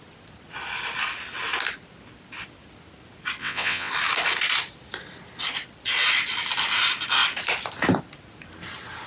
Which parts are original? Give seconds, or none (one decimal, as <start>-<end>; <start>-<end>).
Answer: 0.0-3.4; 3.9-9.1